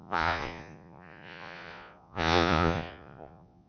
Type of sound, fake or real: fake